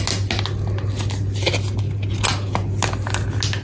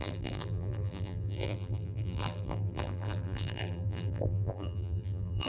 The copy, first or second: second